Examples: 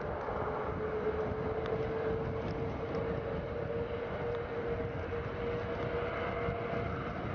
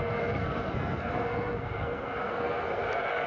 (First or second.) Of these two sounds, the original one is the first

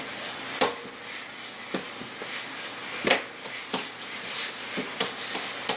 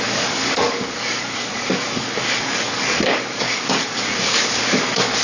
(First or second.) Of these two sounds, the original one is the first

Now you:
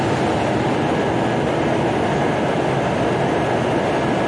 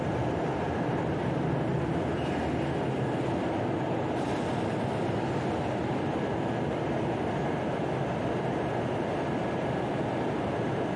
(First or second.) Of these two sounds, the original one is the first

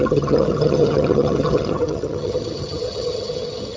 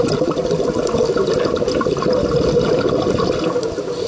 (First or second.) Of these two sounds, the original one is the second